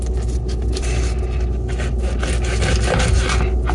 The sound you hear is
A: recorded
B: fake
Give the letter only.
A